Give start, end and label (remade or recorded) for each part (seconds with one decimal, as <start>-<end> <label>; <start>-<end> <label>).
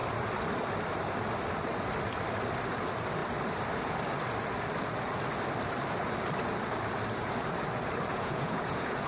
0.0-8.1 recorded; 8.1-9.1 remade